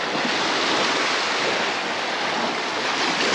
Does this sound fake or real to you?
real